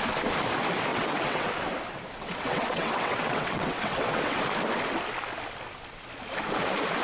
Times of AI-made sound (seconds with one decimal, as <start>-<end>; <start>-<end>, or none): 0.9-1.5; 2.1-4.4